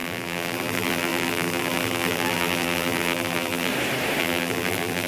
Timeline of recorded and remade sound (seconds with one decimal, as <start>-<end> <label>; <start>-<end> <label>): 0.0-3.7 remade; 3.7-4.2 recorded; 4.2-5.1 remade